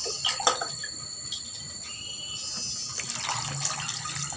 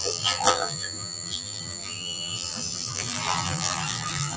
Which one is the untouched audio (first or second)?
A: first